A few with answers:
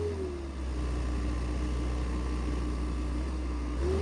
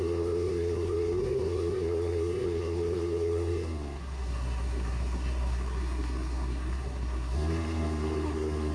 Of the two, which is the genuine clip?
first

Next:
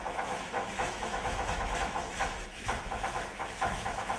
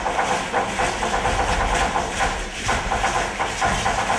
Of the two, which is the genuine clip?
second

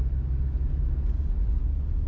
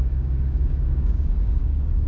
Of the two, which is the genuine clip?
first